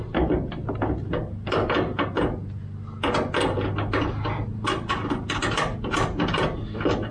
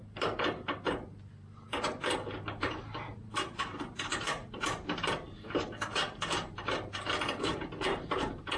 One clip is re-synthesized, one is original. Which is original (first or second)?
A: first